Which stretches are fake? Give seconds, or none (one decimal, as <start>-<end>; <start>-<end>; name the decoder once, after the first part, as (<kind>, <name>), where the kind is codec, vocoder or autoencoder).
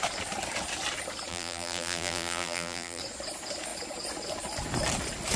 1.3-3.0 (vocoder, BigVGAN v2)